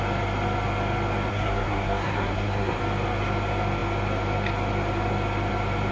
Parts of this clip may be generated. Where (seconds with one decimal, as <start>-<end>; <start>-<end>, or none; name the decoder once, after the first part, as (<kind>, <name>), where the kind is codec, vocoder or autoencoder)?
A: 1.3-2.8 (codec, SNAC)